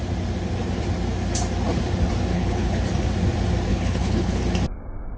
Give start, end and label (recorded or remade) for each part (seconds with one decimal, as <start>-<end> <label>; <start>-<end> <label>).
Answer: 0.0-2.3 recorded; 2.3-2.8 remade; 2.8-3.7 recorded; 3.7-4.4 remade; 4.4-5.2 recorded